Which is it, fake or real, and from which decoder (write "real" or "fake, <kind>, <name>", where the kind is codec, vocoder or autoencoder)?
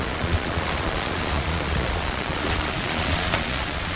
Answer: fake, vocoder, Vocos